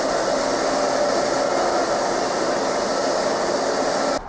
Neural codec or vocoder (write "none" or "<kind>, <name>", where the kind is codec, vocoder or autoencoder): none